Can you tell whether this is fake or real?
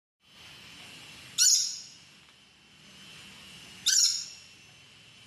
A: real